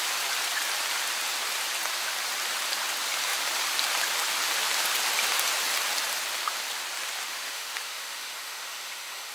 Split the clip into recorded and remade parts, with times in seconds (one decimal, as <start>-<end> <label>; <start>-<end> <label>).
0.0-7.3 recorded; 7.3-9.3 remade